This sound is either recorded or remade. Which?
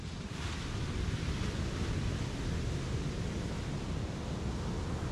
recorded